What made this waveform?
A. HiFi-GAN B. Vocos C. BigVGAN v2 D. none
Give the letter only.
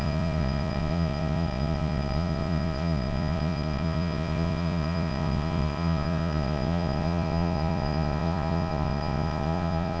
B